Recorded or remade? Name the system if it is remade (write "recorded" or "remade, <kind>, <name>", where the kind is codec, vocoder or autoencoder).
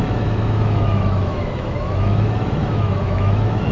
remade, autoencoder, DAC-VAE